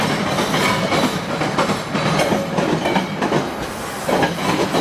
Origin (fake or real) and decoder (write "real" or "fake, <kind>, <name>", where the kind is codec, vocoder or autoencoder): real